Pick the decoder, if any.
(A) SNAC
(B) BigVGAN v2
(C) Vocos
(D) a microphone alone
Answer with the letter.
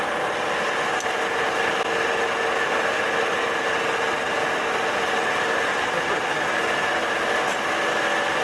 D